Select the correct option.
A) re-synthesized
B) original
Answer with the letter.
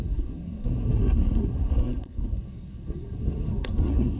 A